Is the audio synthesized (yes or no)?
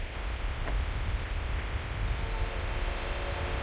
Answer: no